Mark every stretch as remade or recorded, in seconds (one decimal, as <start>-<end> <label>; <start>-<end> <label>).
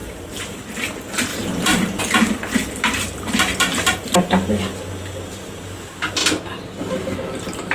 0.0-0.6 remade; 0.6-1.3 recorded; 1.3-2.0 remade; 2.0-7.7 recorded